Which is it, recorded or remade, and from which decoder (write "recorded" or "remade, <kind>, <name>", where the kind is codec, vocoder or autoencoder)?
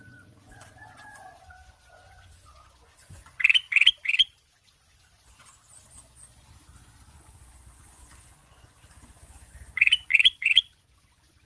remade, vocoder, Vocos